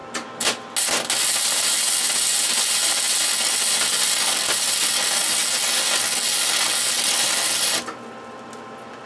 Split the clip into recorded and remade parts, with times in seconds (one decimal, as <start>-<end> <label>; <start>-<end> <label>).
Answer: 0.0-9.1 recorded